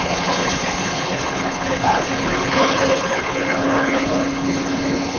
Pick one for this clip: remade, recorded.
remade